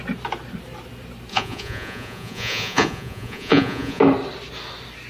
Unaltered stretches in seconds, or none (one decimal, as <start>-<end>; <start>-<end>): 0.0-1.3; 4.0-5.1